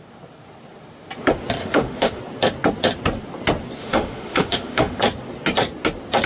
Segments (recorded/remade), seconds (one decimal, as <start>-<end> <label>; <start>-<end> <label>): 0.0-1.6 recorded; 1.6-2.2 remade; 2.2-3.8 recorded; 3.8-5.0 remade; 5.0-6.3 recorded